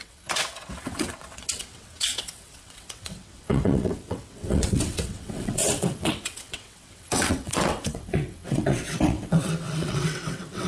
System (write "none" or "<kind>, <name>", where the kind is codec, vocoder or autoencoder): vocoder, WaveNeXt